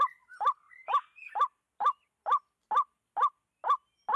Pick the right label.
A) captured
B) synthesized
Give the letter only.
A